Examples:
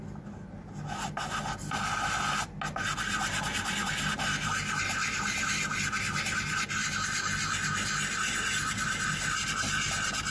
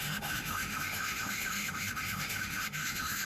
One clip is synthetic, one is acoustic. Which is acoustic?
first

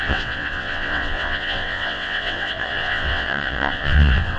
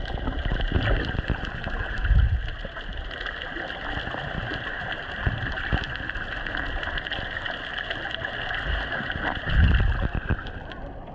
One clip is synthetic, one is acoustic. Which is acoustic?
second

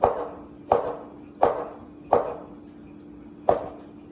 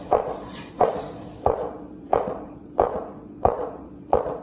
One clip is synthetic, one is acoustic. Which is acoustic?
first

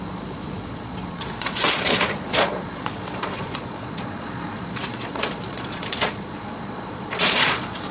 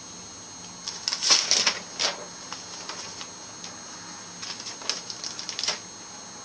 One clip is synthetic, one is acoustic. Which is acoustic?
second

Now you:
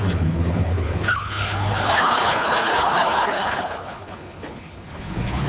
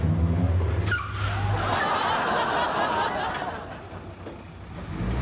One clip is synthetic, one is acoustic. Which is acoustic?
second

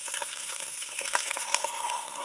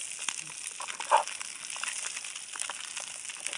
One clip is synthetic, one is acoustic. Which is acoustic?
second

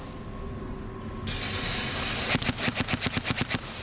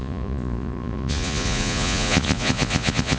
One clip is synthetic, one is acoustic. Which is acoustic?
first